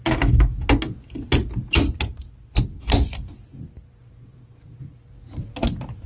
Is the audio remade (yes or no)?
no